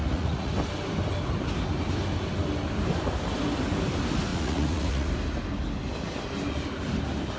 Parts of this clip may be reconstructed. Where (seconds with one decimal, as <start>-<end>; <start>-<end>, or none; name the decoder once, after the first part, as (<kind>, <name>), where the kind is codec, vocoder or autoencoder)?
0.0-0.5 (vocoder, Vocos); 4.3-5.1